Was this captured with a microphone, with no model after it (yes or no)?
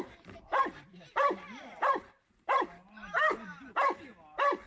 no